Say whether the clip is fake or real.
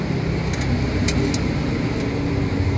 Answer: real